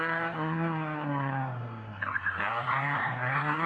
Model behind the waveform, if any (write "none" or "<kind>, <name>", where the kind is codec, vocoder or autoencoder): codec, SNAC